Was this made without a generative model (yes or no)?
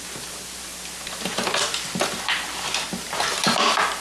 yes